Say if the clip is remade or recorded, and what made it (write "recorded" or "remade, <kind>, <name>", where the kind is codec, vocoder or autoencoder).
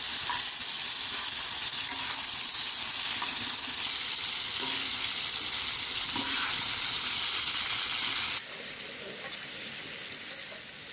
recorded